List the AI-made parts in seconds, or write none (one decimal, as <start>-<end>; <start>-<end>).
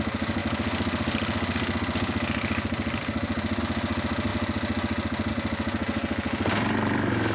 none